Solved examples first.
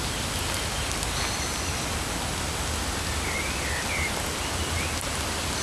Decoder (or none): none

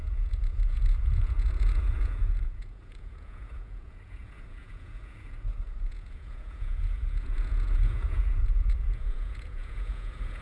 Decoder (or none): vocoder, Vocos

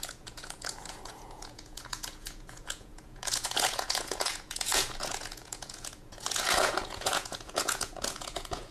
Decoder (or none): vocoder, Vocos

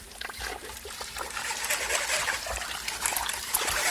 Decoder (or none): none